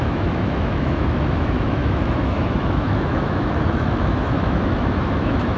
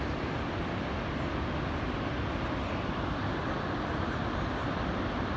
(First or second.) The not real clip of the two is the first